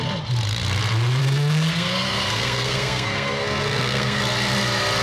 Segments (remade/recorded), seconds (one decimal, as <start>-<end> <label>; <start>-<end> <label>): 0.0-1.2 recorded; 1.2-4.2 remade; 4.2-5.0 recorded